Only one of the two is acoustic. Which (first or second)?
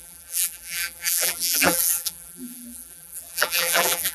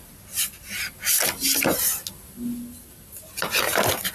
second